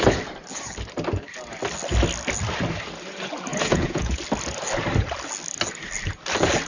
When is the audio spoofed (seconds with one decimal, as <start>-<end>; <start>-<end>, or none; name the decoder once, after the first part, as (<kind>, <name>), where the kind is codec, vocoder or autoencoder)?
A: 3.5-4.2 (vocoder, Vocos)